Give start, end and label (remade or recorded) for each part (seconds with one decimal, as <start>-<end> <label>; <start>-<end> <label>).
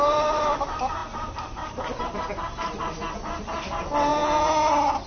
0.0-5.1 recorded